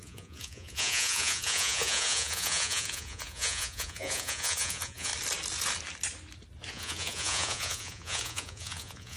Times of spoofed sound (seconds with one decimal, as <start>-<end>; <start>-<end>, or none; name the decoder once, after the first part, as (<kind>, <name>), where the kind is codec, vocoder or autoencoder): 0.0-5.1 (vocoder, Vocos); 6.7-9.2